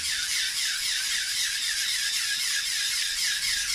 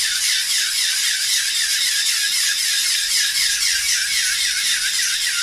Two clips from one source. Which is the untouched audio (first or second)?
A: second